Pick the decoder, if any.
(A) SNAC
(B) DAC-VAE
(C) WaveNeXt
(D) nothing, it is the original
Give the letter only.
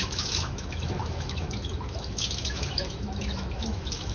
B